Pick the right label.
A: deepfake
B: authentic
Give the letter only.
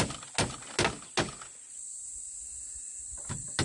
B